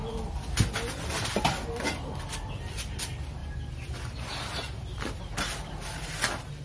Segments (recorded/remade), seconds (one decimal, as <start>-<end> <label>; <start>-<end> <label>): 0.0-6.6 recorded